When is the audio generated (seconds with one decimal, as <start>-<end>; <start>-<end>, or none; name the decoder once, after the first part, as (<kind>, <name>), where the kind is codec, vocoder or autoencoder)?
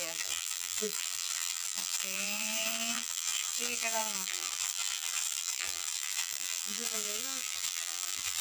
0.0-8.4 (vocoder, BigVGAN v2)